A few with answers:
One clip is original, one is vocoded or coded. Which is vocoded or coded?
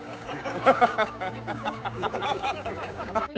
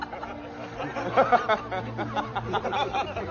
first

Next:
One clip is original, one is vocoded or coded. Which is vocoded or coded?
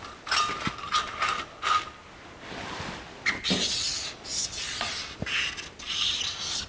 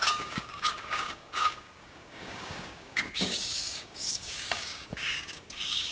second